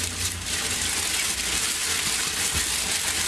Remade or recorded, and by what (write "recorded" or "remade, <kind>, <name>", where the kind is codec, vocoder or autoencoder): recorded